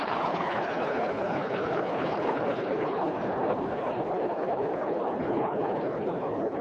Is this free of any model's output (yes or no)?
no